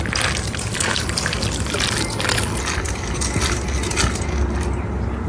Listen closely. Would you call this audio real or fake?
real